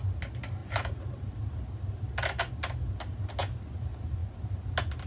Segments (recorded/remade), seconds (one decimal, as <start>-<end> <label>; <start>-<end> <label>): 0.0-5.1 recorded